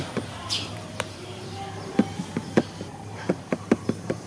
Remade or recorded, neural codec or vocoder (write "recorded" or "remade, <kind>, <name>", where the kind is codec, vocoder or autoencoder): remade, vocoder, BigVGAN v2